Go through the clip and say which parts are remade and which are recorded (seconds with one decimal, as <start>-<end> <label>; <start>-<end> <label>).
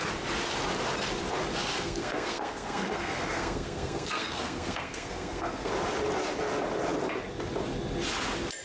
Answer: 0.0-1.7 recorded; 1.7-5.7 remade; 5.7-8.6 recorded